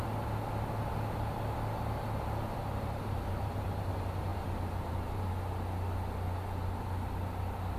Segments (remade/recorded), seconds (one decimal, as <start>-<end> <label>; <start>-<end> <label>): 0.0-2.6 recorded; 2.6-3.9 remade; 3.9-4.3 recorded; 4.3-5.3 remade; 5.3-7.8 recorded